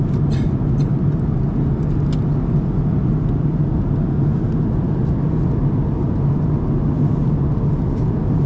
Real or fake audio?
real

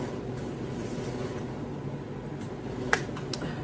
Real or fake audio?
real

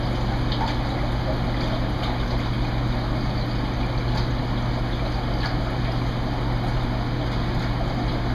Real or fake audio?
real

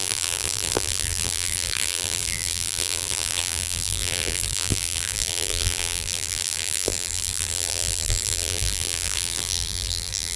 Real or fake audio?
fake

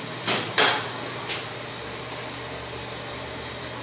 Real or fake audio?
real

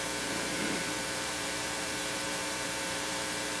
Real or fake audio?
fake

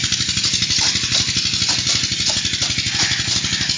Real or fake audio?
real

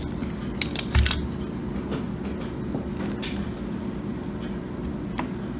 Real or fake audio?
real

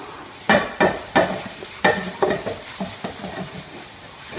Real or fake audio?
real